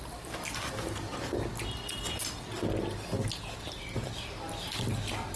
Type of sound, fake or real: real